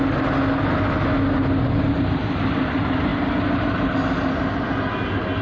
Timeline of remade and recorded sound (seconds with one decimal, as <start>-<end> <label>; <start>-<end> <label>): 0.0-5.4 recorded

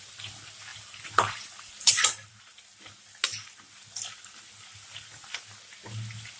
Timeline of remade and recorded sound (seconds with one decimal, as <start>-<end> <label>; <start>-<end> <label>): 0.0-0.7 recorded; 0.7-2.3 remade; 2.3-6.4 recorded

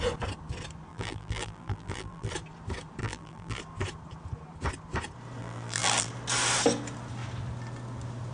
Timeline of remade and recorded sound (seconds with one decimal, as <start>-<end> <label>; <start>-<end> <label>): 0.0-0.9 recorded; 0.9-2.3 remade; 2.3-3.0 recorded; 3.0-3.6 remade; 3.6-5.4 recorded; 5.4-6.1 remade; 6.1-8.3 recorded

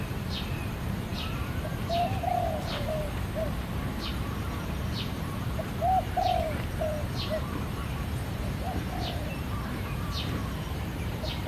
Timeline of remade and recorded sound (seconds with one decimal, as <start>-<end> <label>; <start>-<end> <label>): 0.0-11.5 remade